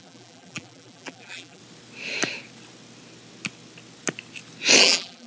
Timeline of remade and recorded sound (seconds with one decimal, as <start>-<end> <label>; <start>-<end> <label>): 0.0-1.6 remade; 1.6-4.8 recorded; 4.8-5.3 remade

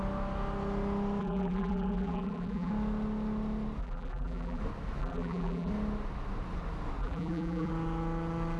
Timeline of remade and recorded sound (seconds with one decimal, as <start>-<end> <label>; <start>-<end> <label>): 0.0-1.2 recorded; 1.2-2.7 remade; 2.7-3.8 recorded; 3.8-4.6 remade; 4.6-5.0 recorded; 5.0-5.7 remade; 5.7-7.0 recorded; 7.0-7.7 remade; 7.7-8.6 recorded